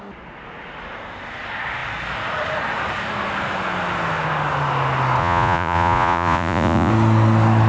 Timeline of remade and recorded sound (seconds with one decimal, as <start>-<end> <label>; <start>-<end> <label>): 0.0-5.2 recorded; 5.2-6.9 remade; 6.9-7.7 recorded